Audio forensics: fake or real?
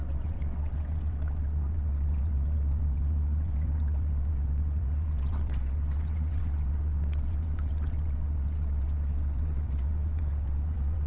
fake